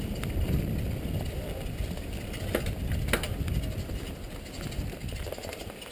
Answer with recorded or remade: recorded